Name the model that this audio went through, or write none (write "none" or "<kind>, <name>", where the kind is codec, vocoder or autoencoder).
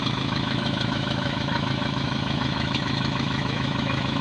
autoencoder, DAC-VAE